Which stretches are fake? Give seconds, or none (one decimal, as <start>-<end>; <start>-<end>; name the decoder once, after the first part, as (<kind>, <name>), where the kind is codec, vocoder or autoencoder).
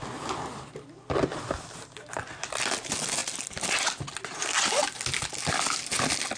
none